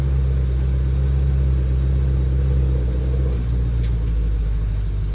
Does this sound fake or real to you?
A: real